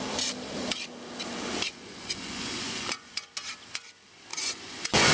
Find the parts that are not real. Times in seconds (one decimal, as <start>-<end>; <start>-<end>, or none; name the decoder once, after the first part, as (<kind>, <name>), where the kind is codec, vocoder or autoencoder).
1.7-3.3 (vocoder, Vocos); 4.3-5.1